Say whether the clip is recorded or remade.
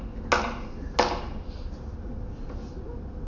recorded